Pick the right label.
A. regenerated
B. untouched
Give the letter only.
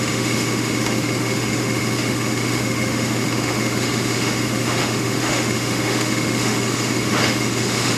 A